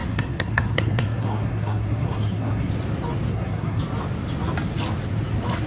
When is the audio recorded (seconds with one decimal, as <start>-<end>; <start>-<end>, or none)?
2.7-3.3; 3.8-5.7